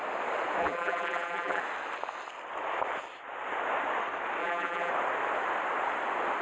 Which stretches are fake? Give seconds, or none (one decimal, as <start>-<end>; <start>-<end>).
0.6-1.6; 4.4-4.9